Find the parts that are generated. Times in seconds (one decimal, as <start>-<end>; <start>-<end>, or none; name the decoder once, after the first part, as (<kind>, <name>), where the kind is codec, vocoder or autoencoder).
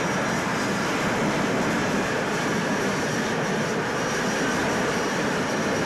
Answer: 1.8-3.8 (vocoder, BigVGAN v2); 4.6-5.9